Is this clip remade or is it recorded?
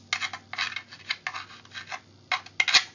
recorded